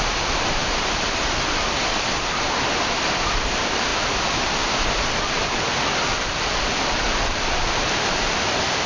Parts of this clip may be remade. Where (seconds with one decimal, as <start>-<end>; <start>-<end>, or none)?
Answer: 3.9-8.2